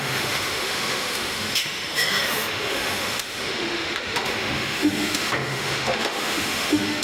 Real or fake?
fake